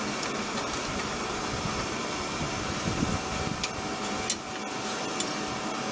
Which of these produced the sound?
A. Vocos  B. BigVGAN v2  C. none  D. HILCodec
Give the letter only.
C